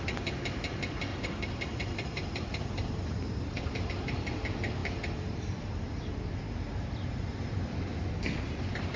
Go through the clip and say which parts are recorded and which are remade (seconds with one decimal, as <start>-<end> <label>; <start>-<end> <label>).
0.0-1.1 recorded; 1.1-3.9 remade; 3.9-4.8 recorded; 4.8-7.3 remade; 7.3-9.0 recorded